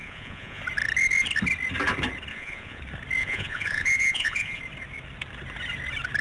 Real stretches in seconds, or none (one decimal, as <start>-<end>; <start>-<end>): 0.6-2.3; 2.8-3.2; 4.6-6.2